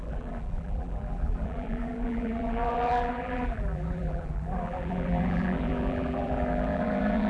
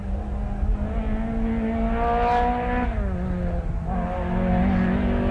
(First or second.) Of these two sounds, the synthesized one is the first